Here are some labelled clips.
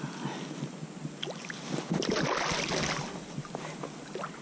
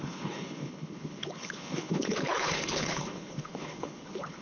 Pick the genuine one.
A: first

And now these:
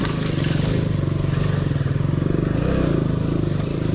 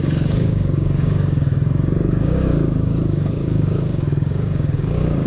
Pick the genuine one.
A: first